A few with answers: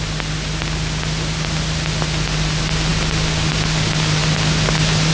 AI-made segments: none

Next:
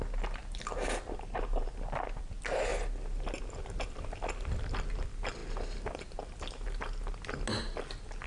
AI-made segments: none

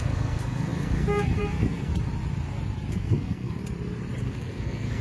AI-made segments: 0.0-1.9 (codec, SNAC); 2.9-3.6; 4.2-5.0

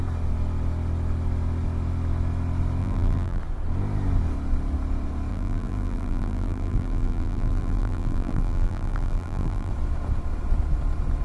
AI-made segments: 2.8-3.4 (vocoder, BigVGAN v2); 5.3-9.7

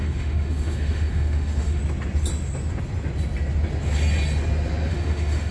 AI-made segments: 0.0-1.8 (autoencoder, DAC-VAE); 4.9-5.5

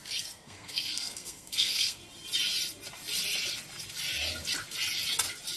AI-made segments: 0.0-2.0 (codec, SNAC)

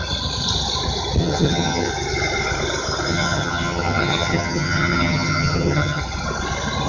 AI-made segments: 1.2-1.9 (vocoder, HiFi-GAN); 3.1-6.0

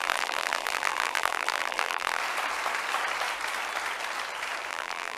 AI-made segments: 0.0-2.2 (vocoder, BigVGAN v2); 4.7-5.2